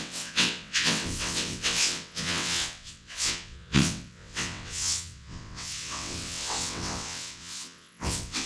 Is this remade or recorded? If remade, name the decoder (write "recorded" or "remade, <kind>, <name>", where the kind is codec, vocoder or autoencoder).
remade, vocoder, WaveNeXt